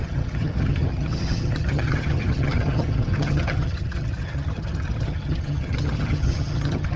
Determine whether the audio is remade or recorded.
remade